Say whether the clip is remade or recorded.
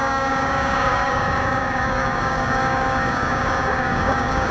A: remade